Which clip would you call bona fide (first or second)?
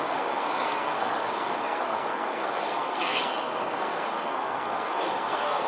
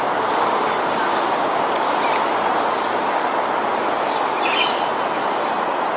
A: second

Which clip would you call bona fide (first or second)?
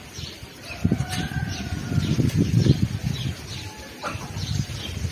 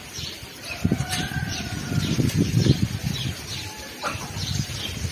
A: first